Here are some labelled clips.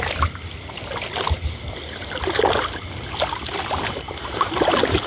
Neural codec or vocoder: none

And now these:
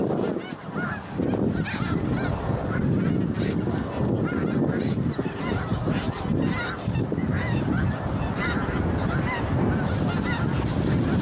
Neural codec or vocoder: none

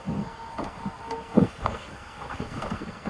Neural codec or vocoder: codec, SNAC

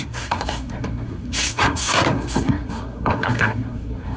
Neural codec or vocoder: codec, SNAC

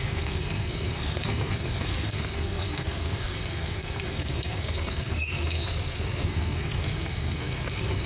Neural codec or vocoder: codec, SNAC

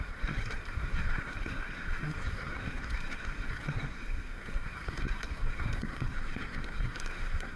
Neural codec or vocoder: codec, SNAC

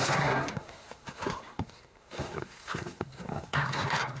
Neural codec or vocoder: codec, SNAC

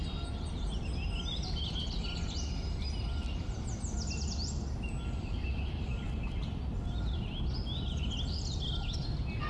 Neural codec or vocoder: none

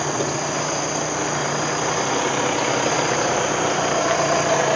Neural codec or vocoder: none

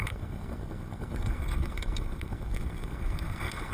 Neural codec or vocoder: codec, SNAC